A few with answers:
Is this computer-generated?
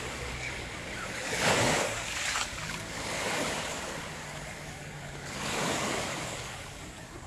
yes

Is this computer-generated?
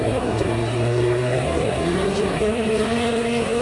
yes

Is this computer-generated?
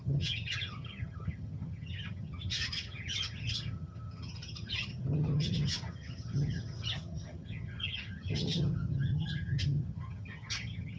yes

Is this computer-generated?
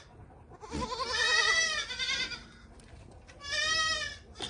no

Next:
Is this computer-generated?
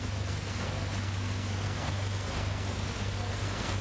yes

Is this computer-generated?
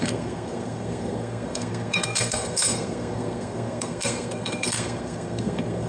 yes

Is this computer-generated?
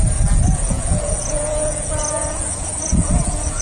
yes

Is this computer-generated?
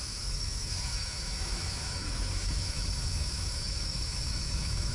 yes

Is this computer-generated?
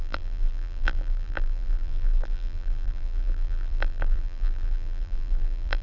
yes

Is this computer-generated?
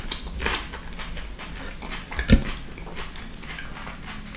no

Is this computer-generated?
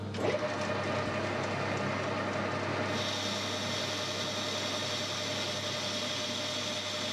no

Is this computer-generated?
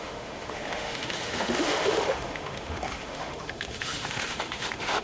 yes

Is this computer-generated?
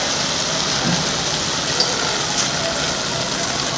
no